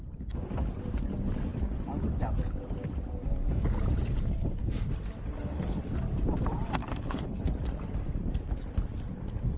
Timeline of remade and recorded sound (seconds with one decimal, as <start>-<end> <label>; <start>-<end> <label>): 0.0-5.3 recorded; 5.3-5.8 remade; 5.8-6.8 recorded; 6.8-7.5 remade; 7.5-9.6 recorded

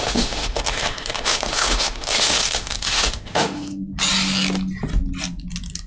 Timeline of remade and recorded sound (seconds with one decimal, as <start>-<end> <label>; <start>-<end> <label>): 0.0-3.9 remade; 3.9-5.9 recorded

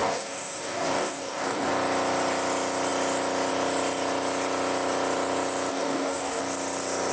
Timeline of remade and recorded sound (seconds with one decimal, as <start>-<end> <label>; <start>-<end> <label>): 0.0-1.7 remade; 1.7-5.7 recorded; 5.7-6.4 remade; 6.4-7.1 recorded

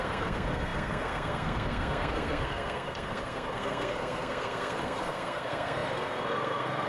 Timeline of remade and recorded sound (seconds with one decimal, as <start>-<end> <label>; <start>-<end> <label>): 0.0-6.9 remade

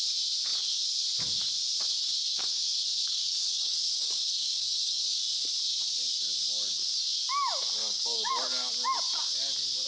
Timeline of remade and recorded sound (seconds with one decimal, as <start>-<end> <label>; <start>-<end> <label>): 0.0-2.3 recorded; 2.3-5.0 remade; 5.0-7.8 recorded; 7.8-8.3 remade; 8.3-9.9 recorded